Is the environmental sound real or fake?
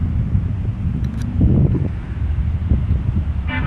real